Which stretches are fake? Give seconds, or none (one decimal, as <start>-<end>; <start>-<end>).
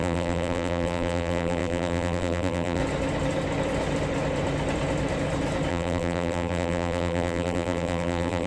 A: 0.0-2.8; 5.7-8.5